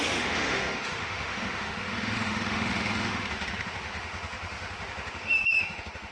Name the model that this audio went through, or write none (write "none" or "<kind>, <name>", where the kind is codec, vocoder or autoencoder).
autoencoder, DAC-VAE